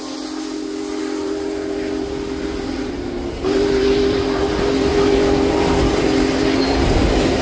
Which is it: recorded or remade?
recorded